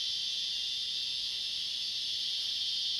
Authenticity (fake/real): real